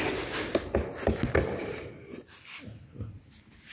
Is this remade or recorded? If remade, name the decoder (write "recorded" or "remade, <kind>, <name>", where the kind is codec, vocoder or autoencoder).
recorded